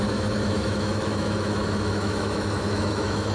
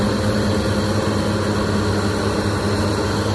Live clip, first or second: second